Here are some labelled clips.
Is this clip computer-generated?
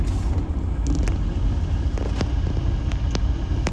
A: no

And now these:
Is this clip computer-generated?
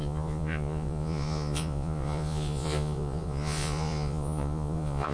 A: yes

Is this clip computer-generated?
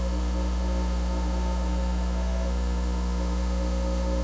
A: yes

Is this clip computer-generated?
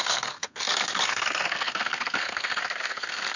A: yes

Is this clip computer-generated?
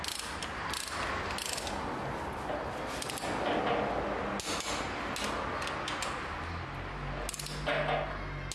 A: no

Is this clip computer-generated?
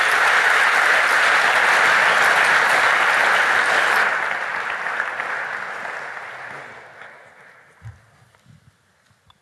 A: no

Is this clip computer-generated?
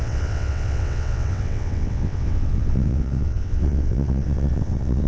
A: yes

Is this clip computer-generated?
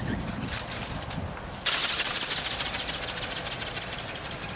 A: no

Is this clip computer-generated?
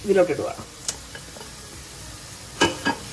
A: yes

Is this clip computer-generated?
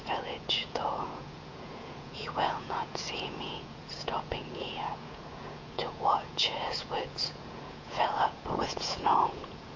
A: yes